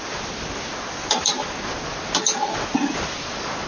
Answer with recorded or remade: recorded